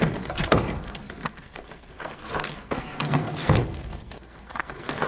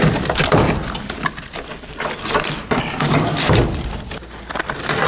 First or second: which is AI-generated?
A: first